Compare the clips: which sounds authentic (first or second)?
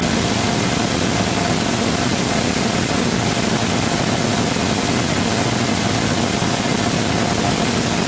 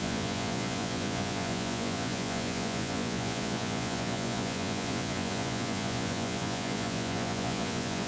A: first